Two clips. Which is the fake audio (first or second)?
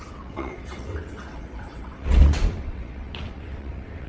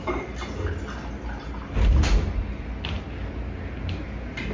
first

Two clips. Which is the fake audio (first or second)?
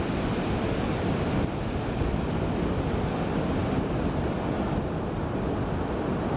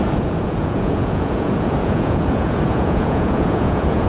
second